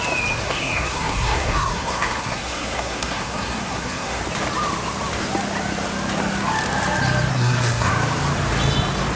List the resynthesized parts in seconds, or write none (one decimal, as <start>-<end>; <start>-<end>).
0.4-4.2; 7.3-7.9